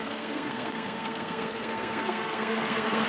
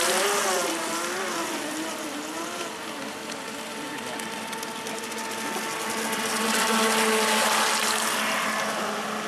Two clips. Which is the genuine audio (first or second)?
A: second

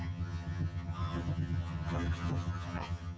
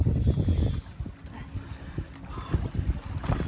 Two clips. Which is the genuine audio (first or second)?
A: second